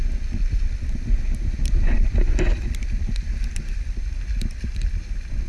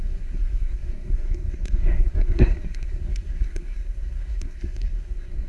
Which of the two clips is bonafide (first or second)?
first